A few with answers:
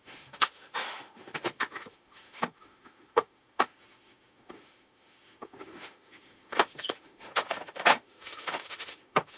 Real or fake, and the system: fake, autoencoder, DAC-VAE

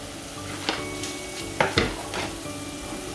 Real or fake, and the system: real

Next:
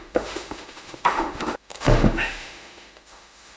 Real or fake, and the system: fake, autoencoder, DAC-VAE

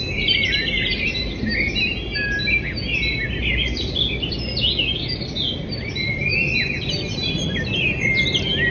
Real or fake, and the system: real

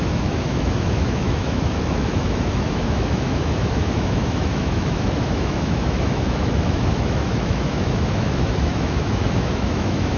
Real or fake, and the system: fake, autoencoder, DAC-VAE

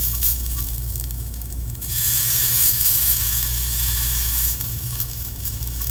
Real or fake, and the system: fake, autoencoder, DAC-VAE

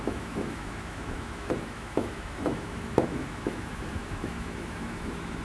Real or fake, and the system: fake, autoencoder, DAC-VAE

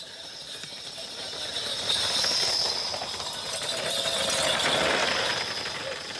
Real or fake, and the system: real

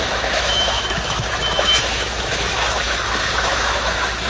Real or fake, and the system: fake, autoencoder, DAC-VAE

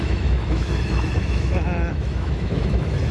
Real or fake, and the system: fake, autoencoder, DAC-VAE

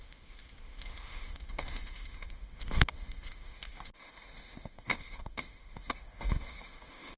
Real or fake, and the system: fake, autoencoder, DAC-VAE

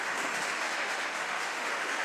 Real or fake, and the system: fake, autoencoder, DAC-VAE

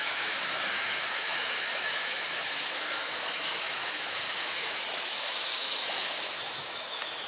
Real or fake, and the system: fake, autoencoder, DAC-VAE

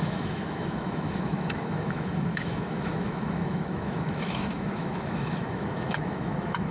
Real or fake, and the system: fake, autoencoder, DAC-VAE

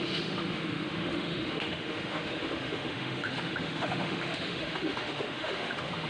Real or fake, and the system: fake, autoencoder, DAC-VAE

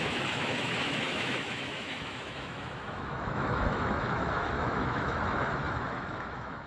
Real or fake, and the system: fake, autoencoder, DAC-VAE